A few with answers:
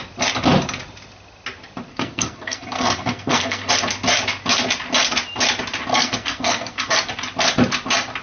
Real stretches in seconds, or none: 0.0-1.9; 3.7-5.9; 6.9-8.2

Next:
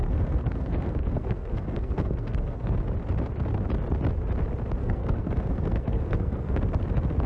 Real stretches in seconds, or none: 2.8-4.8; 6.6-7.3

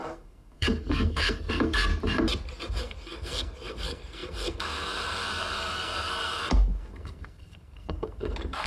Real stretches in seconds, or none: 1.9-2.8

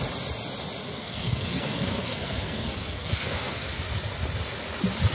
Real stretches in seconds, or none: 0.0-0.8; 3.9-5.1